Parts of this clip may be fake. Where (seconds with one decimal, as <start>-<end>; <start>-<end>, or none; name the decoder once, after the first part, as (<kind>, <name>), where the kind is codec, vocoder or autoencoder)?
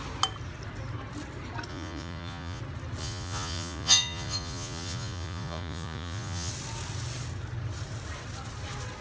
1.7-2.6 (vocoder, Vocos); 3.0-6.5